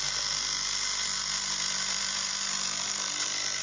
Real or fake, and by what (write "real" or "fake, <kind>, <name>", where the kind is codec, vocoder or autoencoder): real